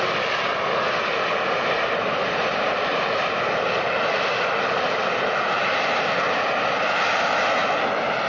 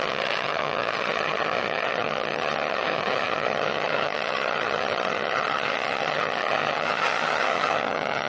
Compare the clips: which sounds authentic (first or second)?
first